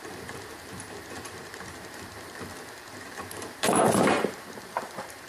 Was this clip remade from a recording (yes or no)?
yes